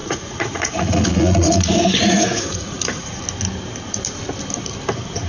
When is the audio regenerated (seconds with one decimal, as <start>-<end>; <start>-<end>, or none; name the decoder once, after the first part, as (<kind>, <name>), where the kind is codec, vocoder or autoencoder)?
0.0-3.2 (vocoder, Vocos)